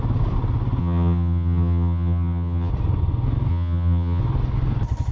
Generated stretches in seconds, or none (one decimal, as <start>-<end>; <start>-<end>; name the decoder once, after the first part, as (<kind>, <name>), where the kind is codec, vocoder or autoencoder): 0.8-2.7 (vocoder, HiFi-GAN); 3.5-4.2